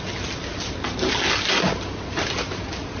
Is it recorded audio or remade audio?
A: recorded